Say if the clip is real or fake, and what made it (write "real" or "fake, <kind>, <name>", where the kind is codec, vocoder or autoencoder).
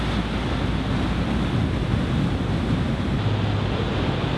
real